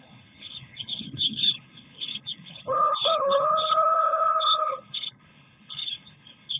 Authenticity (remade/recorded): remade